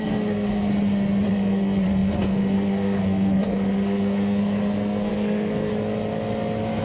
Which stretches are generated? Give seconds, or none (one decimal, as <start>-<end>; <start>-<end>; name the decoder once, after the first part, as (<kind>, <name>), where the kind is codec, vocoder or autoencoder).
0.0-0.7 (codec, SNAC); 1.3-5.7